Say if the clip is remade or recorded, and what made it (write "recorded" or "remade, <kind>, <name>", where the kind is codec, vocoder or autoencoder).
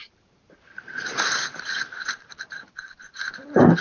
remade, vocoder, BigVGAN v2